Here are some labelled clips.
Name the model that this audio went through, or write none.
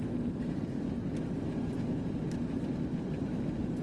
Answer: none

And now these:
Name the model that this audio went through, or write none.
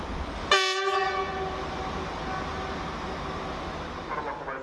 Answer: none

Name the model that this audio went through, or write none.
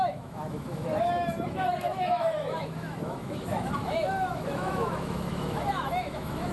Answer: autoencoder, DAC-VAE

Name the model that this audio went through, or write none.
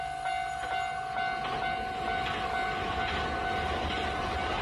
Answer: none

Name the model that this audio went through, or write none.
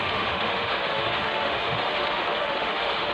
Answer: autoencoder, DAC-VAE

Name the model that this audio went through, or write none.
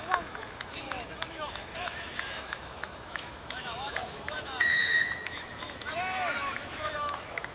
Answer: autoencoder, DAC-VAE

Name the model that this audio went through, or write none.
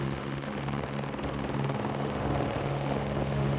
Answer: autoencoder, DAC-VAE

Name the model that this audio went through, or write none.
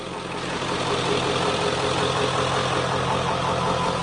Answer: none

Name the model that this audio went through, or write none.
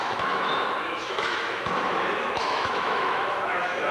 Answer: autoencoder, DAC-VAE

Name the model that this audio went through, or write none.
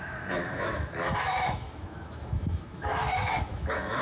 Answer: autoencoder, DAC-VAE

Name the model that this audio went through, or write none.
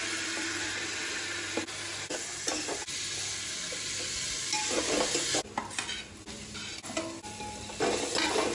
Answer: none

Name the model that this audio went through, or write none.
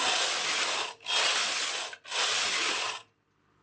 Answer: none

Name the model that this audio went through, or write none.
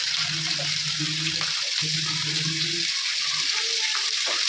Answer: none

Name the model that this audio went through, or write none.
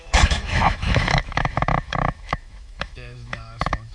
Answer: autoencoder, DAC-VAE